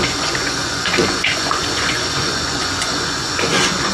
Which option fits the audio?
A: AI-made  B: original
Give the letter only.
A